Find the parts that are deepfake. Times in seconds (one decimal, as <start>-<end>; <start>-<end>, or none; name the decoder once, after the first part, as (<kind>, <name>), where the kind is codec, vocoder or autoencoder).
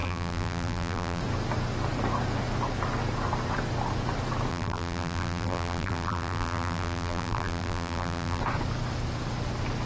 0.0-1.2 (vocoder, BigVGAN v2); 4.5-8.4